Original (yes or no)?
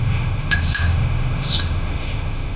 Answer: no